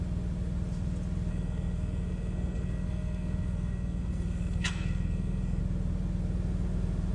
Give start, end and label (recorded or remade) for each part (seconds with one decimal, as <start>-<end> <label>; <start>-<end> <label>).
0.0-1.3 recorded; 1.3-5.6 remade; 5.6-7.1 recorded